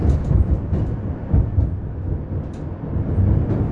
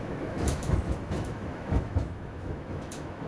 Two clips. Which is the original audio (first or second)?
first